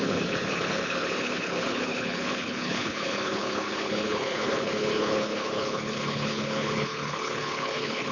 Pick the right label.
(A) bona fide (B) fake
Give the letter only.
B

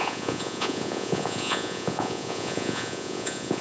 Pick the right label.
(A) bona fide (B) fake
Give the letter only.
B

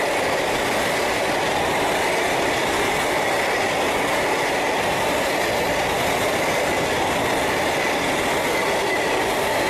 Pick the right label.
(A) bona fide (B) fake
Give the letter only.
A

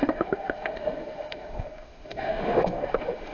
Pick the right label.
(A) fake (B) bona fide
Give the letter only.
A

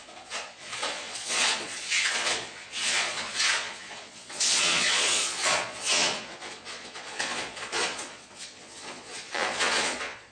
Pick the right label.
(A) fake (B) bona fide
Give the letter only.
A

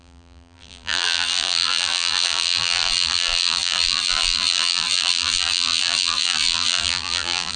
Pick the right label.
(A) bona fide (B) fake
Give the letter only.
B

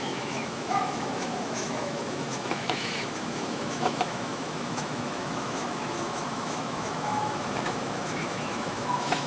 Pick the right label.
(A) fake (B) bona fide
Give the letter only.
A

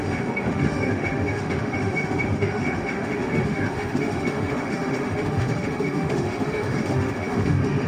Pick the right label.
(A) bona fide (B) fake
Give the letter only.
B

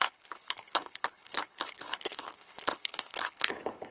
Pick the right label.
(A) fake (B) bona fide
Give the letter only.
A